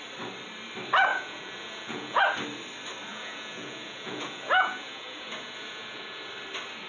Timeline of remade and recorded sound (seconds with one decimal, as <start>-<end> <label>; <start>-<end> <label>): 0.0-1.1 recorded; 1.1-2.2 remade; 2.2-3.1 recorded; 3.1-6.3 remade; 6.3-6.9 recorded